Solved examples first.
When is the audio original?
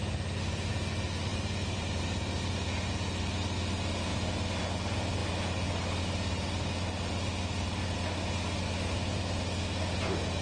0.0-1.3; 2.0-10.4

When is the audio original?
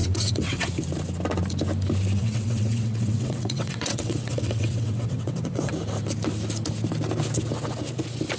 0.7-2.2; 5.7-8.4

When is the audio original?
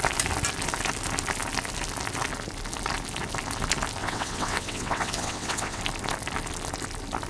0.0-4.0; 5.8-7.3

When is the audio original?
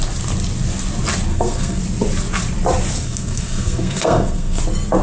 0.0-1.3; 1.8-3.0; 4.6-5.0